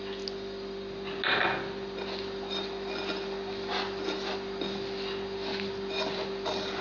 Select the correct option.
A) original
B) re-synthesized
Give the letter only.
A